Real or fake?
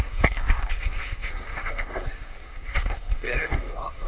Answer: fake